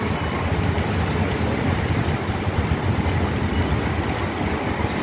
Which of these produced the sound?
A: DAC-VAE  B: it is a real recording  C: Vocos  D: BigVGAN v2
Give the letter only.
B